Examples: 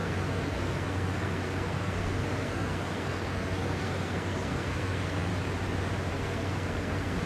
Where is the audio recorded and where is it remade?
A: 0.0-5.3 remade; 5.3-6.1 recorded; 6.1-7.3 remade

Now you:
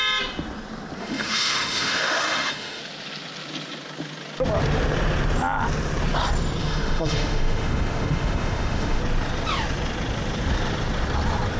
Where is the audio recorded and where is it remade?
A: 0.0-1.0 recorded; 1.0-2.8 remade; 2.8-6.6 recorded; 6.6-9.0 remade; 9.0-11.6 recorded

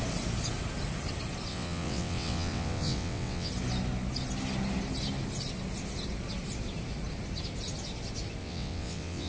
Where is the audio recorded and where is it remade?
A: 0.0-1.5 recorded; 1.5-3.5 remade; 3.5-8.4 recorded; 8.4-9.3 remade

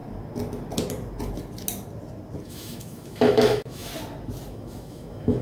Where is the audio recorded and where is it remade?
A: 0.0-2.4 recorded; 2.4-3.9 remade; 3.9-4.5 recorded; 4.5-5.4 remade

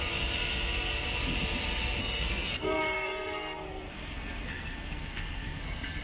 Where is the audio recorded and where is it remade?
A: 0.0-2.0 recorded; 2.0-5.6 remade; 5.6-6.0 recorded

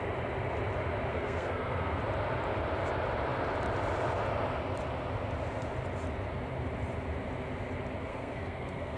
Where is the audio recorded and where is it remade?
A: 0.0-1.1 recorded; 1.1-2.0 remade; 2.0-8.1 recorded; 8.1-9.0 remade

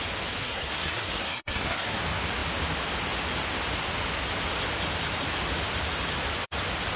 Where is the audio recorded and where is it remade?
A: 0.0-0.4 recorded; 0.4-2.0 remade; 2.0-7.0 recorded

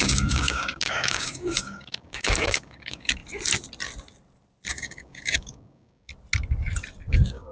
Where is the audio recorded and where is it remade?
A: 0.0-3.2 remade; 3.2-4.7 recorded; 4.7-6.1 remade; 6.1-7.1 recorded; 7.1-7.5 remade